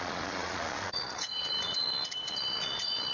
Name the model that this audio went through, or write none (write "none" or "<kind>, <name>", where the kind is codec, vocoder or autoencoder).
vocoder, Vocos